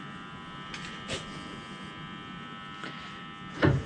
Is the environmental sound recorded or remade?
recorded